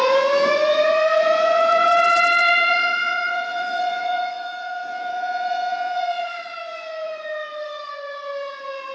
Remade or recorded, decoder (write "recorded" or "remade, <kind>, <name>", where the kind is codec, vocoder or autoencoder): remade, vocoder, Vocos